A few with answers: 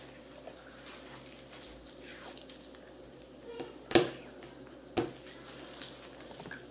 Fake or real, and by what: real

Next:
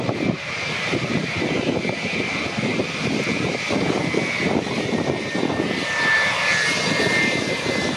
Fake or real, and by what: real